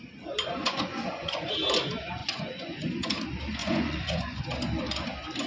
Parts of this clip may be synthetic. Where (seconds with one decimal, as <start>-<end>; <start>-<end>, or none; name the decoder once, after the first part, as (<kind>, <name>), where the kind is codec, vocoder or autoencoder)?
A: 0.6-1.5 (vocoder, Vocos); 2.2-3.2; 3.6-4.4